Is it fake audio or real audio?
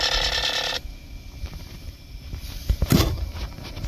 real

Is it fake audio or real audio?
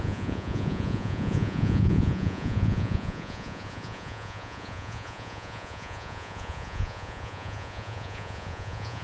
fake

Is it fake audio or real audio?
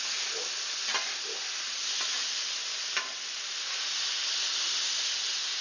real